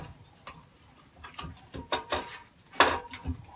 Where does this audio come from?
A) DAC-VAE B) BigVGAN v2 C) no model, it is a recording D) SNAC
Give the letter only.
C